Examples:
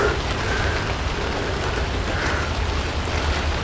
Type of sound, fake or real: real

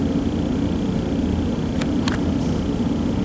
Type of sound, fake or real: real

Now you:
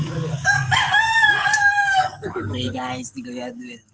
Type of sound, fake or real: fake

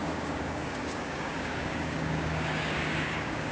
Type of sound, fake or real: fake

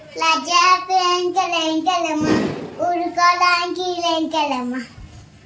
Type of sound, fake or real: real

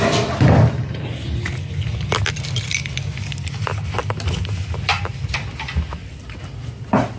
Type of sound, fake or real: real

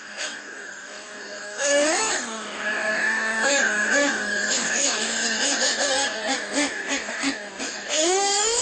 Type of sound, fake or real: fake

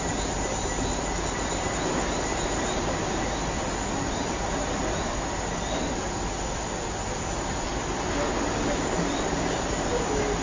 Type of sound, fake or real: real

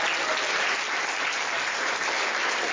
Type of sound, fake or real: real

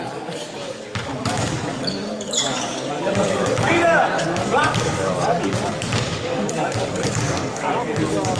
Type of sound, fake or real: fake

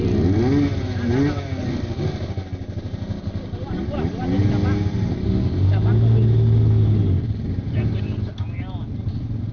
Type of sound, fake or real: real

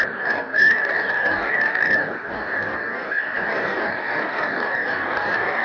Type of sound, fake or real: fake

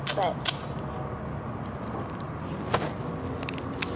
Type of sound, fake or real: real